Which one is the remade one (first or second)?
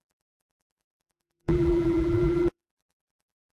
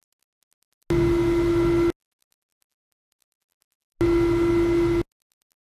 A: first